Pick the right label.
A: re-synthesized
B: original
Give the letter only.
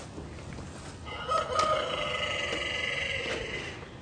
B